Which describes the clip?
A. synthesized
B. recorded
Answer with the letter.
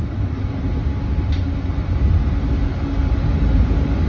B